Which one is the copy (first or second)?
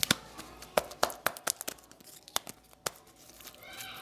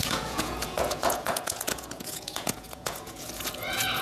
second